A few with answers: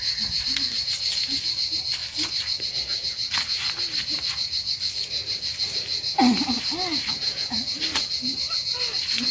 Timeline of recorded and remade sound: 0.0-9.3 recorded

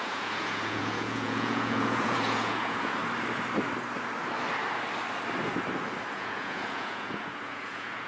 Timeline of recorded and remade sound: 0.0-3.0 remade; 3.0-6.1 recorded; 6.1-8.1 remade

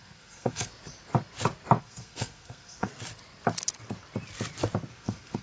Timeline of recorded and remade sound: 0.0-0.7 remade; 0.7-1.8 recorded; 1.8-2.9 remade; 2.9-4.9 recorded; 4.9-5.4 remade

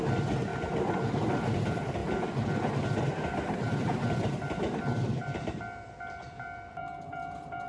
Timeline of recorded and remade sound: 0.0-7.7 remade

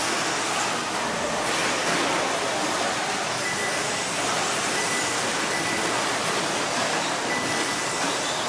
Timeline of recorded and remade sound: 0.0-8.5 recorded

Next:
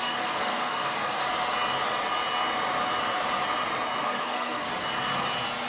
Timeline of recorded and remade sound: 0.0-1.3 remade; 1.3-4.0 recorded; 4.0-4.7 remade; 4.7-5.7 recorded

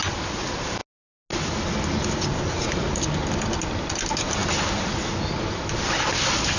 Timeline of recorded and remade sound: 0.0-6.6 recorded

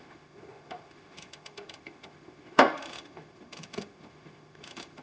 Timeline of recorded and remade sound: 0.0-5.0 remade